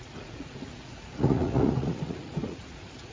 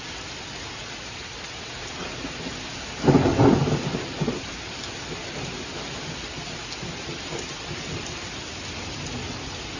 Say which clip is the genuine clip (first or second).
second